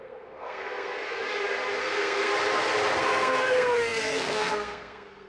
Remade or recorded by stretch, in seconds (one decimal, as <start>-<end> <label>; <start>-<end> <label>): 0.0-1.2 remade; 1.2-1.8 recorded; 1.8-2.3 remade; 2.3-3.0 recorded; 3.0-5.3 remade